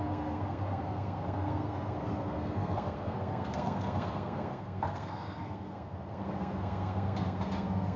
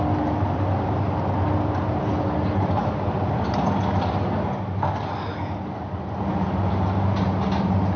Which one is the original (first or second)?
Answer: second